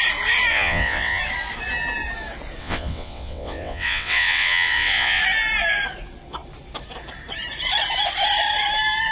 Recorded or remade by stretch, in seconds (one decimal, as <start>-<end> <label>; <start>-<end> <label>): 0.0-0.5 recorded; 0.5-1.2 remade; 1.2-2.6 recorded; 2.6-5.2 remade; 5.2-9.1 recorded